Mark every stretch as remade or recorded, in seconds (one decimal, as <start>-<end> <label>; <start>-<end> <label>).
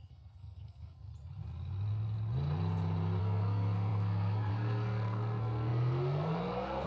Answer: 0.0-1.1 remade; 1.1-3.2 recorded; 3.2-6.9 remade